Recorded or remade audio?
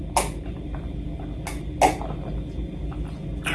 recorded